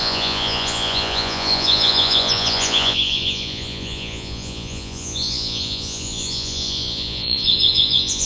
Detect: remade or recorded remade